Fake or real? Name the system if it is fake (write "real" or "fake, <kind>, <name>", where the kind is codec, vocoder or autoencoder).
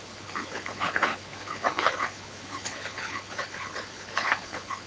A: fake, codec, HILCodec